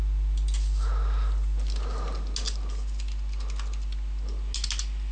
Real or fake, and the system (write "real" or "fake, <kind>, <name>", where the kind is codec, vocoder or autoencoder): real